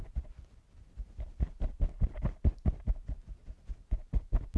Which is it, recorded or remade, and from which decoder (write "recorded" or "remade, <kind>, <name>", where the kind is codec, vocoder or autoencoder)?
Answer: recorded